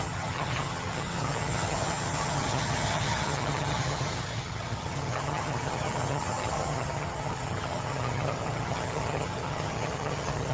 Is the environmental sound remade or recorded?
remade